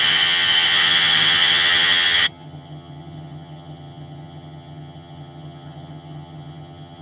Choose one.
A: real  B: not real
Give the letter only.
B